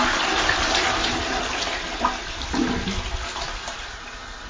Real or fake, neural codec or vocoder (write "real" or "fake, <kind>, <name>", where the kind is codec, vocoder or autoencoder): real